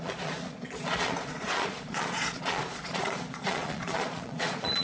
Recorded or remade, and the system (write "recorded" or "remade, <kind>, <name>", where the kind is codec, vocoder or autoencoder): remade, vocoder, Vocos